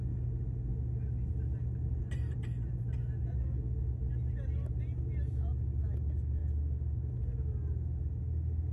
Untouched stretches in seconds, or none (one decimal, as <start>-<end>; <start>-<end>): 0.0-8.7